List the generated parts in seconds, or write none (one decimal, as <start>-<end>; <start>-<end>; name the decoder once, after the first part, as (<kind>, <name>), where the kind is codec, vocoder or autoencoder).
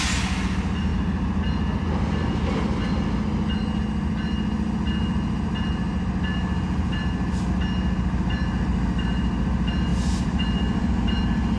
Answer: 9.9-11.2 (vocoder, BigVGAN v2)